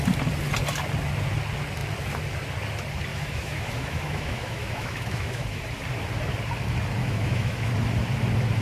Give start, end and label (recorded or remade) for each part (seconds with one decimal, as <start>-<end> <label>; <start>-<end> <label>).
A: 0.0-3.1 recorded; 3.1-5.6 remade; 5.6-7.0 recorded; 7.0-7.7 remade; 7.7-8.6 recorded